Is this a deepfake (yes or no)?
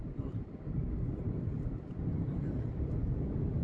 no